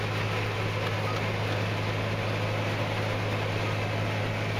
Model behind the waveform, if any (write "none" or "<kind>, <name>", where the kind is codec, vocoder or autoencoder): none